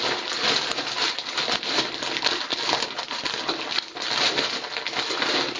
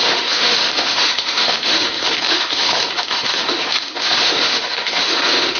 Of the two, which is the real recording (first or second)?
first